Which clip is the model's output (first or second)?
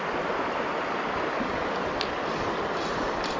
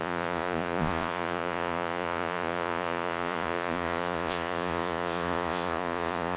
second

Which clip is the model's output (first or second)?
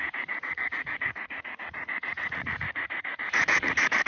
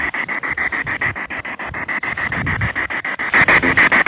first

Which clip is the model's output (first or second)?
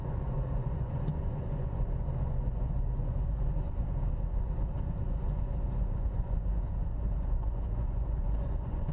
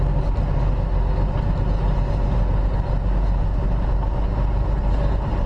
first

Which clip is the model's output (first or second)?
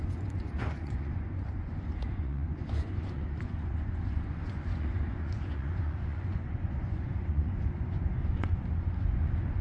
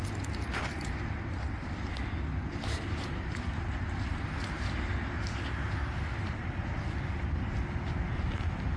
first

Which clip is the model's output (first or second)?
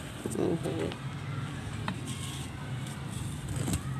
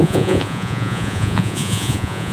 second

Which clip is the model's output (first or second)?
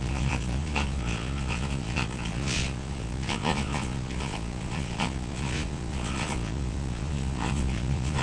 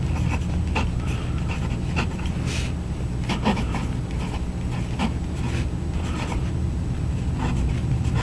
first